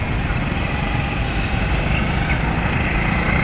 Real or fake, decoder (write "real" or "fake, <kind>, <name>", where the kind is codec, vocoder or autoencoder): real